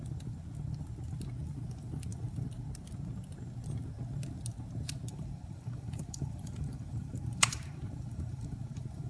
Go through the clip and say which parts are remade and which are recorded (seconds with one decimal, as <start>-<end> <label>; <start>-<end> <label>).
0.0-5.1 recorded; 5.1-9.1 remade